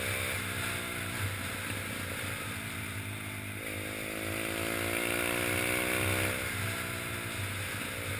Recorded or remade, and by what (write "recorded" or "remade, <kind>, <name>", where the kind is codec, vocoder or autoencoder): recorded